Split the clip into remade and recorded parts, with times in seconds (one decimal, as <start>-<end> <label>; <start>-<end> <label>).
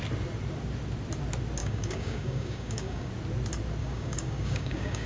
0.0-1.6 recorded; 1.6-3.1 remade; 3.1-3.8 recorded; 3.8-5.1 remade